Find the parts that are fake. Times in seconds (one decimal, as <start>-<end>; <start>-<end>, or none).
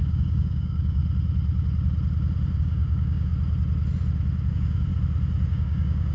0.0-1.0; 2.6-3.3; 4.5-4.9; 5.5-6.1